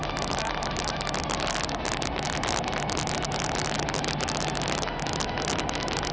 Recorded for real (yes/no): yes